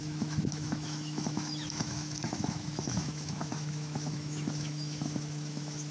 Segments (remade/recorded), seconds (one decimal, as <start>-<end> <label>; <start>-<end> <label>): 0.0-5.9 remade

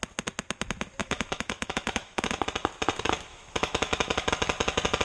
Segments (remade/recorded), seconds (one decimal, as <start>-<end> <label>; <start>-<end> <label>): 0.0-1.0 recorded; 1.0-2.2 remade; 2.2-3.3 recorded; 3.3-4.3 remade; 4.3-5.0 recorded

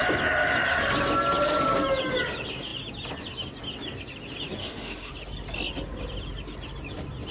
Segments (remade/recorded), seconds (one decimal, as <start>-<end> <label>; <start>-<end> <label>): 0.0-4.6 recorded; 4.6-5.1 remade; 5.1-7.3 recorded

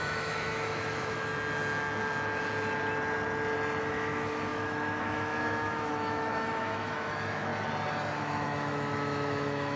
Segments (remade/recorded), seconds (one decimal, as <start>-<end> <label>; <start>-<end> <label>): 0.0-1.3 remade; 1.3-3.8 recorded; 3.8-7.5 remade; 7.5-8.2 recorded; 8.2-9.8 remade